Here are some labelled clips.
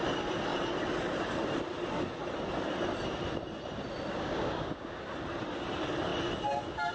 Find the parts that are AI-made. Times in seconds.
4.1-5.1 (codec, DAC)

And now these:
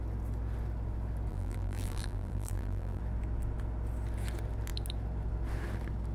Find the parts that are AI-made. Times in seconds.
1.3-3.0 (vocoder, BigVGAN v2)

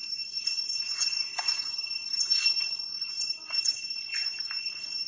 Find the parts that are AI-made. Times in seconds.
0.0-4.1 (vocoder, WaveNeXt); 4.6-5.1

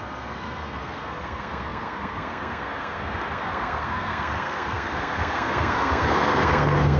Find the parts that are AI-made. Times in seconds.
0.0-7.0 (codec, SNAC)

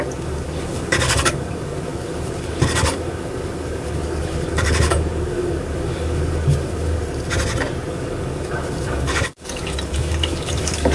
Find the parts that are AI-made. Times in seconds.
0.0-7.0 (codec, DAC); 7.9-10.9

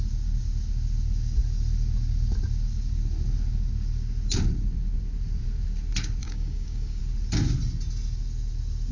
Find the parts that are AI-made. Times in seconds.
6.2-7.0 (codec, DAC)